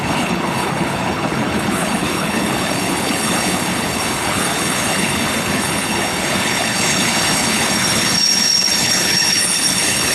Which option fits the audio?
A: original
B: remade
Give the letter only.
B